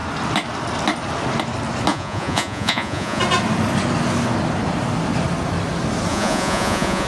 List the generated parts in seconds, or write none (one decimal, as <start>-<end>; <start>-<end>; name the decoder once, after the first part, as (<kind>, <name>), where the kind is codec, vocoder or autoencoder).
1.9-3.2 (vocoder, Vocos); 6.1-7.1